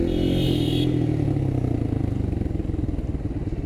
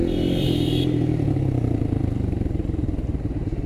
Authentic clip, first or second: first